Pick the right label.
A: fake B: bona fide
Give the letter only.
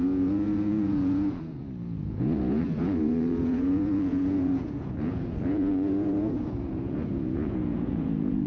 A